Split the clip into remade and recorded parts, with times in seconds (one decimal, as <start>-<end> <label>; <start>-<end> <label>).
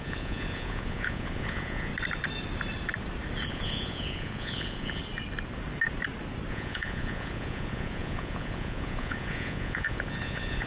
0.0-1.9 remade; 1.9-3.5 recorded; 3.5-5.0 remade; 5.0-6.5 recorded; 6.5-10.7 remade